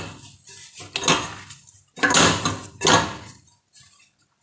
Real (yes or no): yes